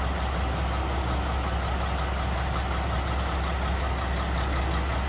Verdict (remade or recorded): recorded